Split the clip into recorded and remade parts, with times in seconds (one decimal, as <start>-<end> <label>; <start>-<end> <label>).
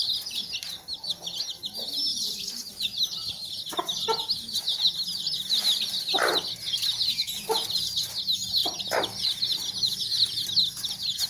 0.0-2.1 recorded; 2.1-2.7 remade; 2.7-11.3 recorded